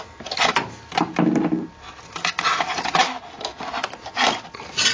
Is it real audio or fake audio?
real